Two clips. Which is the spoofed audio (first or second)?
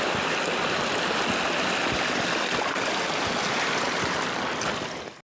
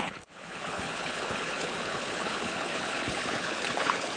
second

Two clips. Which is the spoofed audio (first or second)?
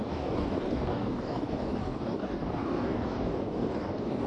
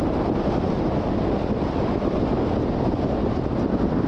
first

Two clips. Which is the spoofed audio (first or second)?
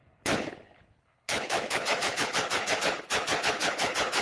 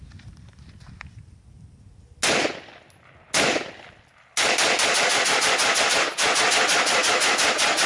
first